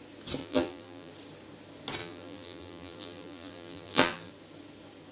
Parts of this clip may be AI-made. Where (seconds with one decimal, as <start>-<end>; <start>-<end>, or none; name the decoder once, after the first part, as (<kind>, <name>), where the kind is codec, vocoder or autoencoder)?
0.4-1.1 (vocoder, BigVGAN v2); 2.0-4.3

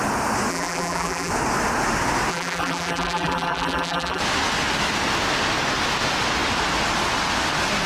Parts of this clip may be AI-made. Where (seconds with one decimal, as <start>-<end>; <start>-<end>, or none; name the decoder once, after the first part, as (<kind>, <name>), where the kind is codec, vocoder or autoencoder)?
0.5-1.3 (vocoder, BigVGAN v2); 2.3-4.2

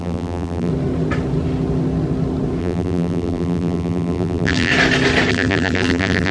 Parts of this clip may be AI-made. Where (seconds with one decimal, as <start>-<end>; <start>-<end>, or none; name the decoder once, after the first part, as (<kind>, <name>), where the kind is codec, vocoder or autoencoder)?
0.0-0.7 (vocoder, BigVGAN v2); 2.6-4.7; 5.3-6.3

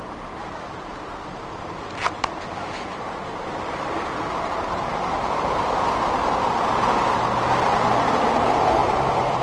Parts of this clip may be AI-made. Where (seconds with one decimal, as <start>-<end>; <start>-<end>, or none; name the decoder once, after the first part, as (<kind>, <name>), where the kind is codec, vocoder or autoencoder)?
0.0-9.4 (vocoder, BigVGAN v2)